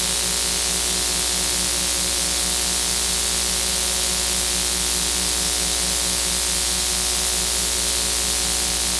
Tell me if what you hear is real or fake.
real